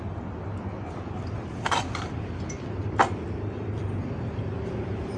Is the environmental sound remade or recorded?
recorded